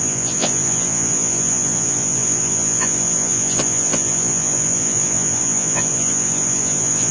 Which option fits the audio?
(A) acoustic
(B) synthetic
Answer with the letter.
B